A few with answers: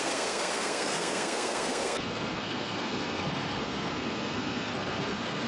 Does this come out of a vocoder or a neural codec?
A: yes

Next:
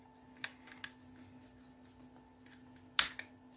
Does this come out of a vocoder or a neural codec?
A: no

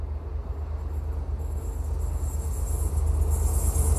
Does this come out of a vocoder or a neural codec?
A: no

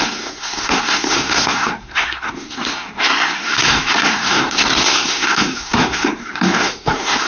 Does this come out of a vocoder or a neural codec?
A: yes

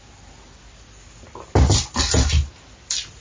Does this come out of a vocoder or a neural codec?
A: no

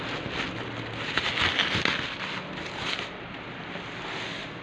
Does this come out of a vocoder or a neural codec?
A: no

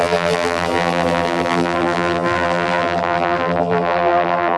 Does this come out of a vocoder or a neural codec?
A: yes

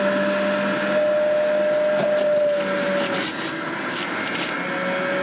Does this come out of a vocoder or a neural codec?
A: no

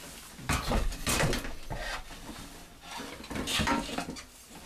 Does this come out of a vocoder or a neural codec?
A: no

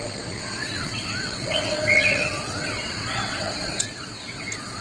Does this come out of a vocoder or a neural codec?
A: yes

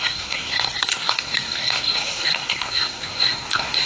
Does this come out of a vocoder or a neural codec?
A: yes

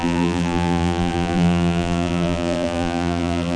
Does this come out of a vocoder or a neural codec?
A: yes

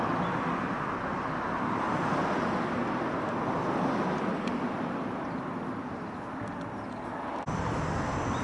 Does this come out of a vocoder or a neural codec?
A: no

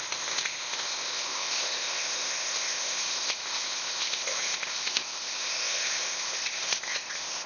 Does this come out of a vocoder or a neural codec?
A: yes